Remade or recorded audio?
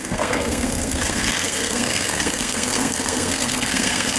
remade